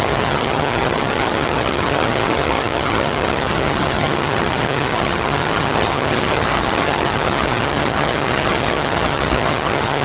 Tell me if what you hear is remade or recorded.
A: remade